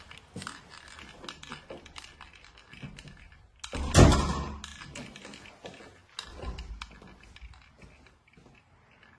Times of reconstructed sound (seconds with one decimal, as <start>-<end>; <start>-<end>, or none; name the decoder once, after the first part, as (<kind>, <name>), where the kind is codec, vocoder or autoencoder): 4.7-5.5 (vocoder, BigVGAN v2)